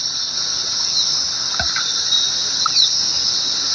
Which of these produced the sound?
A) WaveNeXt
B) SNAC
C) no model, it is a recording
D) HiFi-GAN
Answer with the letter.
C